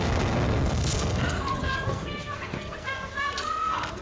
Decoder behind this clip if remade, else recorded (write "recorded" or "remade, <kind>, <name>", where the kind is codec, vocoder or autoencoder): remade, codec, SNAC